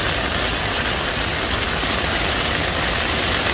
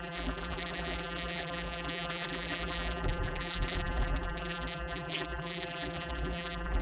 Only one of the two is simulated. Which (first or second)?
second